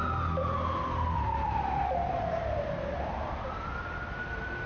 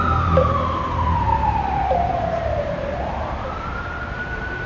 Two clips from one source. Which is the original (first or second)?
first